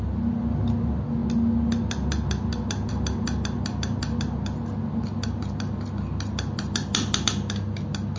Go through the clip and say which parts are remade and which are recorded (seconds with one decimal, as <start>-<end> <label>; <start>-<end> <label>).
0.0-8.2 recorded